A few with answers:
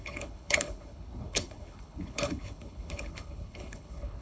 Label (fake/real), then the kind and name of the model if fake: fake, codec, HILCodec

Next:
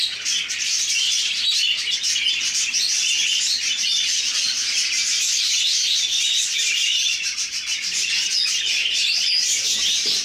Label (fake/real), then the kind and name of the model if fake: real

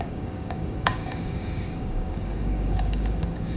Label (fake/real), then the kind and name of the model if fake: fake, codec, DAC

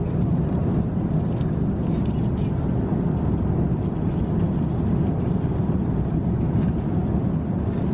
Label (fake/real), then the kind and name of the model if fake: real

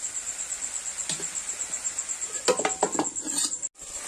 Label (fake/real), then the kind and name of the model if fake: real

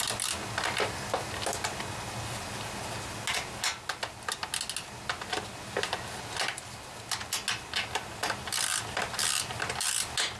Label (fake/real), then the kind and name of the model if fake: real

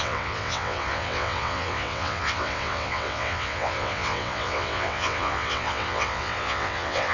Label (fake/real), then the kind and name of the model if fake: fake, vocoder, WaveNeXt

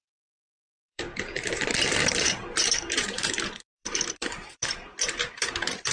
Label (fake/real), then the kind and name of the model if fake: fake, vocoder, BigVGAN v2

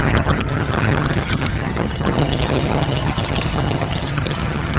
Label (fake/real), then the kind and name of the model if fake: fake, vocoder, HiFi-GAN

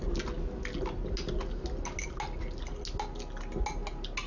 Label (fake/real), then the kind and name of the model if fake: real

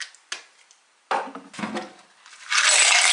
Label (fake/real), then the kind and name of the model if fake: real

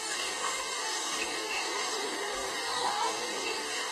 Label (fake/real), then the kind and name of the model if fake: fake, codec, DAC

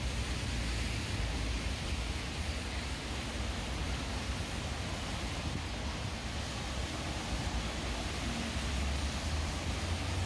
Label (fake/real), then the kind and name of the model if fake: real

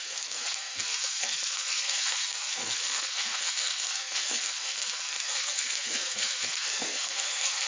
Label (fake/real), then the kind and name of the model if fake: fake, codec, SNAC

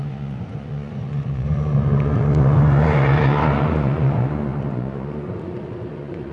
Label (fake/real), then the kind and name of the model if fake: fake, vocoder, Vocos